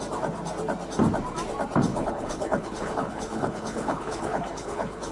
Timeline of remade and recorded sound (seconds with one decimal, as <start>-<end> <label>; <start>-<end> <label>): 0.0-1.9 recorded; 1.9-5.1 remade